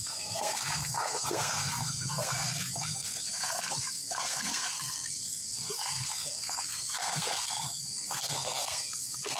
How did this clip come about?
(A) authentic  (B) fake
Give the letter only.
B